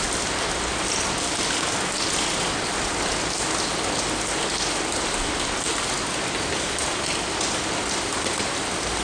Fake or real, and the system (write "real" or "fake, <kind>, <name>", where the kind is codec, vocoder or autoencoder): real